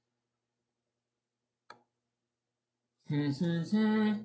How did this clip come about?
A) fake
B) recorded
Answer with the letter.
B